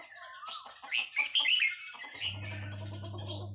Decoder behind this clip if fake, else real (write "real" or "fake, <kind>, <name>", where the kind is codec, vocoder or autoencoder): real